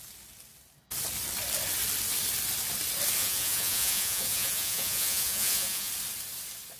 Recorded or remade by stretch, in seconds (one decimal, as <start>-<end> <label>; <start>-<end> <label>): 0.0-3.2 recorded; 3.2-5.9 remade; 5.9-6.8 recorded